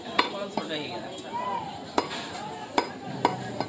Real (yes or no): yes